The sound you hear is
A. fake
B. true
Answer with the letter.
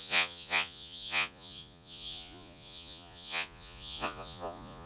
A